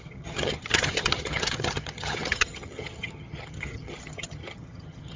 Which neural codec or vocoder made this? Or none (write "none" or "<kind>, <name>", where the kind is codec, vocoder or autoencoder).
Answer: vocoder, HiFi-GAN